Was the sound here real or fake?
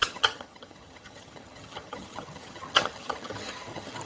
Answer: fake